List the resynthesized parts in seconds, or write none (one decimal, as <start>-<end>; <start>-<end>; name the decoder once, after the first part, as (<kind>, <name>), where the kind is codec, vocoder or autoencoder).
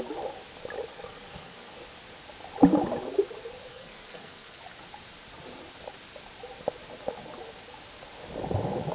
0.9-1.7 (codec, SNAC); 3.7-4.6